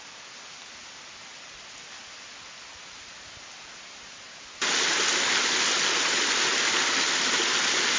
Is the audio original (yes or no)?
yes